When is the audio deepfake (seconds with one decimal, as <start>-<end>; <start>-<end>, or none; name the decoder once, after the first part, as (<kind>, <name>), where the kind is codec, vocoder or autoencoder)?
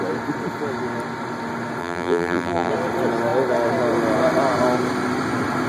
1.8-2.7 (vocoder, BigVGAN v2)